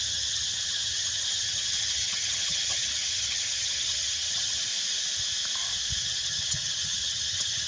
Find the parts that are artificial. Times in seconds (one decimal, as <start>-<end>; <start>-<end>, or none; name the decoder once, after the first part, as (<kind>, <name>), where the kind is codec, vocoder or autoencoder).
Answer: 0.0-4.7 (vocoder, HiFi-GAN); 6.0-7.7